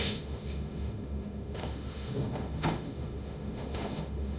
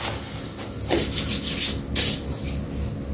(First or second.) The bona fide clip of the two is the second